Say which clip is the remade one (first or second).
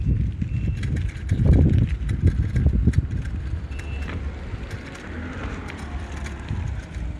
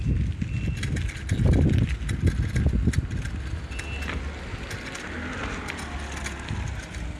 first